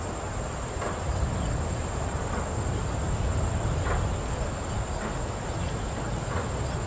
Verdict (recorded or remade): recorded